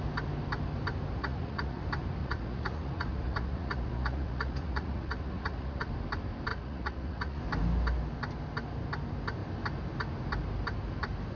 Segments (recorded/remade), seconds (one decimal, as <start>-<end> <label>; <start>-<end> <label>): 0.0-1.2 recorded; 1.2-1.8 remade; 1.8-2.2 recorded; 2.2-5.9 remade; 5.9-6.5 recorded; 6.5-7.4 remade; 7.4-11.4 recorded